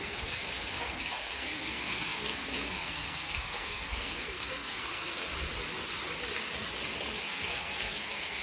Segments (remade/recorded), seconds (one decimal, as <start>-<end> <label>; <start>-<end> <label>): 0.0-5.3 remade; 5.3-7.2 recorded; 7.2-8.4 remade